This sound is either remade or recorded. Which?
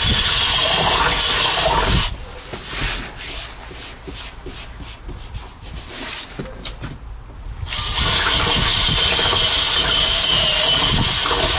recorded